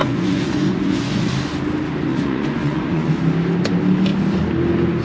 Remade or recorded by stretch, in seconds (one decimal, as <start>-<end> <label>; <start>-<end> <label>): 0.0-1.3 remade; 1.3-2.1 recorded; 2.1-3.1 remade; 3.1-5.0 recorded

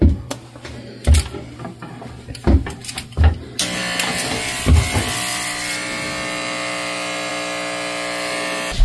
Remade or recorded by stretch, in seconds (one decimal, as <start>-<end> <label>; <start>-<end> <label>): 0.0-8.8 recorded

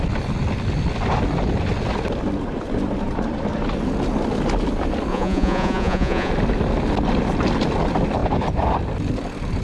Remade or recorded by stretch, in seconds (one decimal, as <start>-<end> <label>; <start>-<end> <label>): 0.0-5.1 recorded; 5.1-6.3 remade; 6.3-9.6 recorded

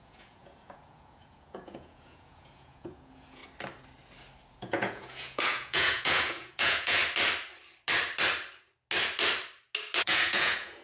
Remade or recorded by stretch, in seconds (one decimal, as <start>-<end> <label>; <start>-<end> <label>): 0.0-3.4 remade; 3.4-4.5 recorded; 4.5-7.0 remade; 7.0-10.0 recorded; 10.0-10.8 remade

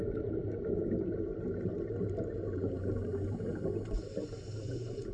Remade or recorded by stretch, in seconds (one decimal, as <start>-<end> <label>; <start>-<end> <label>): 0.0-5.1 recorded

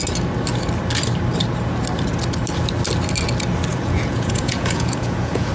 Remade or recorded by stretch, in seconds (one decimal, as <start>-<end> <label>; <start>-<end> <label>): 0.0-3.7 recorded; 3.7-5.5 remade

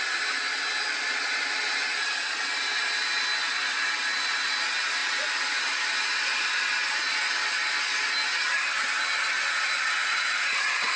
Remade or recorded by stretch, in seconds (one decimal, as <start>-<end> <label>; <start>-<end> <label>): 0.0-10.0 recorded; 10.0-11.0 remade

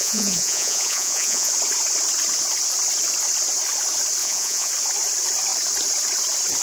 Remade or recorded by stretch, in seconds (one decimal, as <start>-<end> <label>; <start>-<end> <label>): 0.0-1.5 remade; 1.5-4.2 recorded; 4.2-4.7 remade; 4.7-6.6 recorded